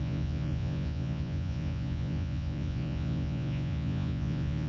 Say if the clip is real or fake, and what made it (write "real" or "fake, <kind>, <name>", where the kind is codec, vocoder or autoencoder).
fake, vocoder, Vocos